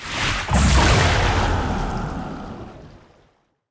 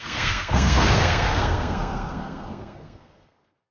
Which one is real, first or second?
first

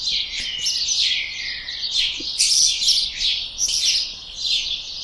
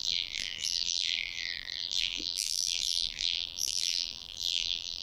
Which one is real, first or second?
first